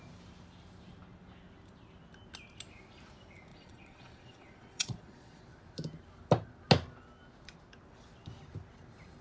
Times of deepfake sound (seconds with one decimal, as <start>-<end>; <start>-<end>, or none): 3.5-5.4